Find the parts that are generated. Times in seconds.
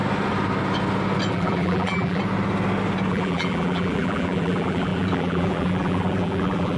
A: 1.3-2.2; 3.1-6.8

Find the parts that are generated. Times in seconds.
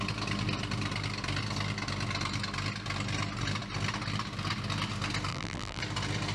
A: 5.3-5.8